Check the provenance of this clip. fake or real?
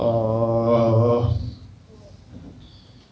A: real